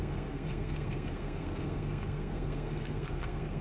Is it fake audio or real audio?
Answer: fake